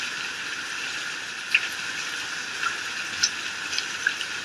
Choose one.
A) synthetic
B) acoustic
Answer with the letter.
B